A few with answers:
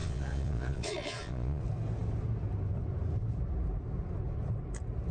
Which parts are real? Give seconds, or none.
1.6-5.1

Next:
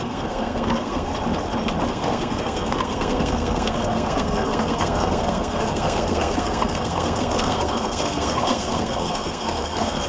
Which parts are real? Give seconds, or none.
1.1-1.9

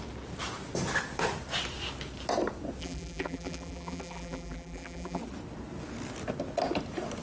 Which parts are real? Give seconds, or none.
0.0-2.8; 5.2-7.2

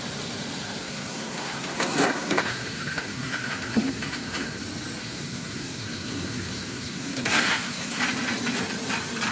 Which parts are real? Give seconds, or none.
0.0-0.8; 4.6-5.0; 8.0-9.3